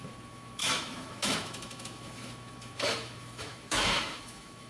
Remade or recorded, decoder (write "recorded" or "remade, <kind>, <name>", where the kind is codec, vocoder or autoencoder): remade, autoencoder, DAC-VAE